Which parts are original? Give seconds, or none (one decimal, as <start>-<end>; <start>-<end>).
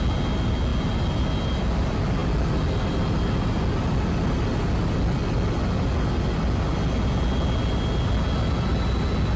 0.0-9.4